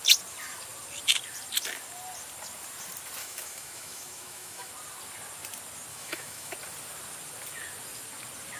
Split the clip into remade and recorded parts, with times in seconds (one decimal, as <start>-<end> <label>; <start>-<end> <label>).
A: 0.0-3.2 recorded; 3.2-4.7 remade; 4.7-5.9 recorded; 5.9-6.5 remade; 6.5-8.6 recorded